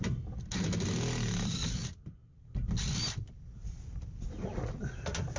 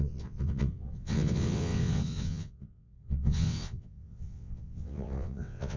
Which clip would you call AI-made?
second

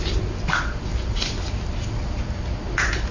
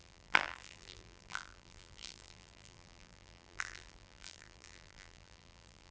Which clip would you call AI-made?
second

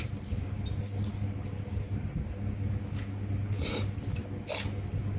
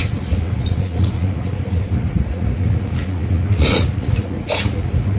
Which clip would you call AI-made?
second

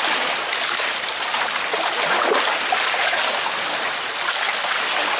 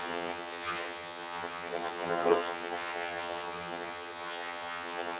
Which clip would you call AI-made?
second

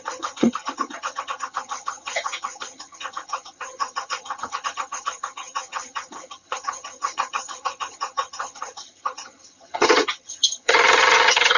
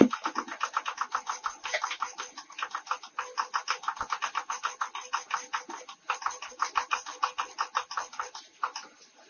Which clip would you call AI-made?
first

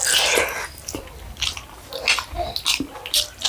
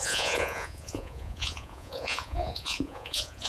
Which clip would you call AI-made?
second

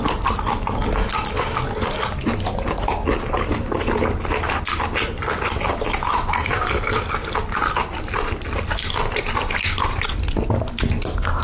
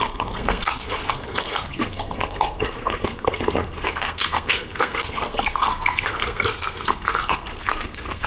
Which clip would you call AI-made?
second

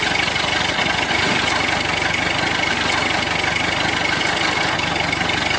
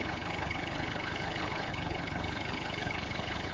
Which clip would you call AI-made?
second